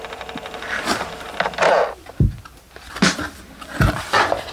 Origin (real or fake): fake